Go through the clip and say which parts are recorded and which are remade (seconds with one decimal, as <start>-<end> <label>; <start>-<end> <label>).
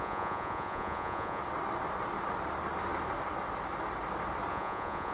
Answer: 0.0-1.4 remade; 1.4-4.5 recorded; 4.5-5.1 remade